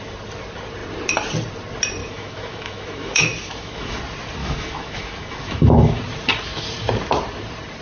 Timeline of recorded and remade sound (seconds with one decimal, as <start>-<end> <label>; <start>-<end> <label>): 0.0-2.0 recorded; 2.0-4.0 remade; 4.0-4.4 recorded; 4.4-6.0 remade; 6.0-7.8 recorded

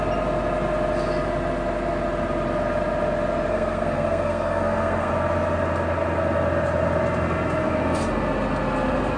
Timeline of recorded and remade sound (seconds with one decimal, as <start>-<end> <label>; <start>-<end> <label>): 0.0-3.5 recorded; 3.5-5.1 remade; 5.1-9.2 recorded

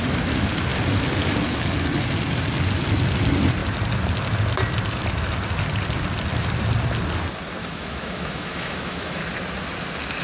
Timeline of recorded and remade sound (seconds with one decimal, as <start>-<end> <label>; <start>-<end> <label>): 0.0-7.6 recorded; 7.6-9.2 remade; 9.2-10.2 recorded

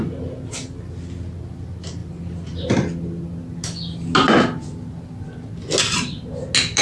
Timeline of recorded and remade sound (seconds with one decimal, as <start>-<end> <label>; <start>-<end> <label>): 0.0-6.8 recorded

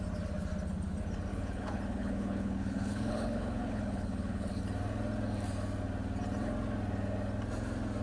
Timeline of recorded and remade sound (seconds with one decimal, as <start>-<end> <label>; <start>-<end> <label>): 0.0-1.3 recorded; 1.3-4.6 remade; 4.6-8.0 recorded

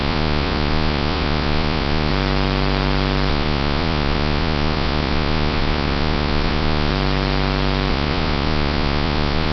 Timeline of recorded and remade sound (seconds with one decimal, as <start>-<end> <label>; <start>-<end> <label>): 0.0-2.1 remade; 2.1-3.3 recorded; 3.3-6.9 remade; 6.9-7.9 recorded; 7.9-9.5 remade

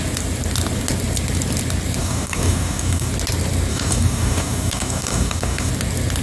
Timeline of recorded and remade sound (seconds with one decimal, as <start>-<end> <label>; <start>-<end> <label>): 0.0-2.0 recorded; 2.0-3.1 remade; 3.1-3.7 recorded; 3.7-5.7 remade; 5.7-6.2 recorded

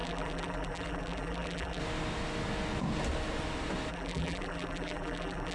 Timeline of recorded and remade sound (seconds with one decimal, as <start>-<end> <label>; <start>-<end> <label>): 0.0-1.8 remade; 1.8-3.9 recorded; 3.9-5.5 remade